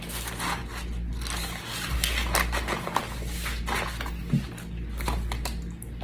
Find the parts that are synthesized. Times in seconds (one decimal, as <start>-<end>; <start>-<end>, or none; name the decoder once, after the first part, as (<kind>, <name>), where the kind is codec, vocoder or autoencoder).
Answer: none